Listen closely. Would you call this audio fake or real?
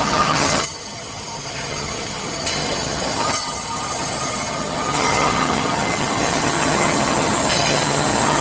fake